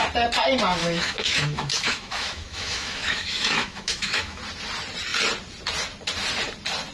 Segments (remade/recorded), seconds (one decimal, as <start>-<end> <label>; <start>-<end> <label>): 0.0-0.8 recorded; 0.8-4.4 remade; 4.4-6.9 recorded